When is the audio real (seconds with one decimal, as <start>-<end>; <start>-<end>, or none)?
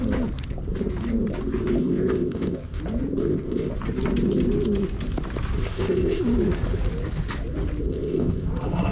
0.0-1.8; 2.8-3.2; 3.7-5.6; 6.2-7.9; 8.5-8.9